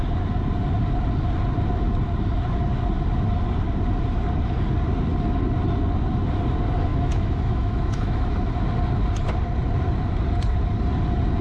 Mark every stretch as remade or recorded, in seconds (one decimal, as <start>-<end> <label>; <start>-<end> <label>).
0.0-6.9 recorded; 6.9-8.3 remade; 8.3-11.4 recorded